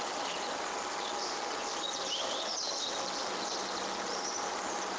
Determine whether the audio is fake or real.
real